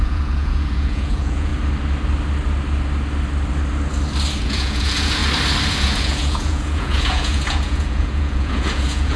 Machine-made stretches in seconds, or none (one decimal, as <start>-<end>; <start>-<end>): 0.0-1.5; 4.4-5.2; 5.7-9.2